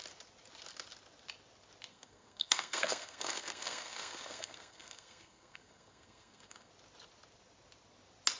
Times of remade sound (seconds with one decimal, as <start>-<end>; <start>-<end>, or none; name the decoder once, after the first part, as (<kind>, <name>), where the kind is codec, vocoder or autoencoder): 1.9-6.7 (codec, SNAC)